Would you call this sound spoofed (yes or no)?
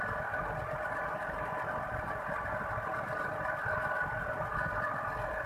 no